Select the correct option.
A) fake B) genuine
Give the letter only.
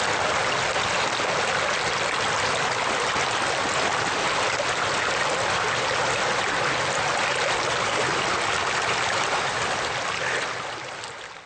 B